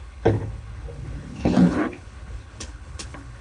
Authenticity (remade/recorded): remade